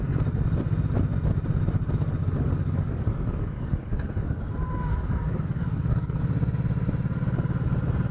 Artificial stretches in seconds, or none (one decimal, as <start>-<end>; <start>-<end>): 2.2-4.4; 4.9-6.2